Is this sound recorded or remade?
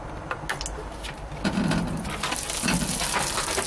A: recorded